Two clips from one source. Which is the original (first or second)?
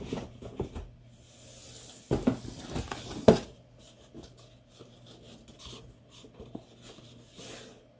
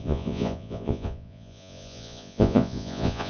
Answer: first